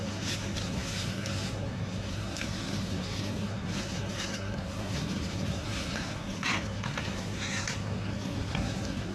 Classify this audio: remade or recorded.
remade